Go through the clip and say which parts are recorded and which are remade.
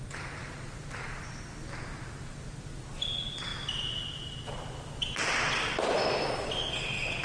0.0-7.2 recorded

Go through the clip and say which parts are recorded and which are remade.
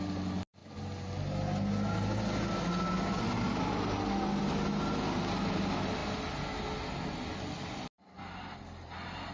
0.0-9.3 recorded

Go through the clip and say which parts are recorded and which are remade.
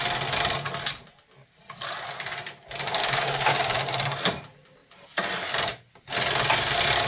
0.0-3.0 recorded; 3.0-3.8 remade; 3.8-7.1 recorded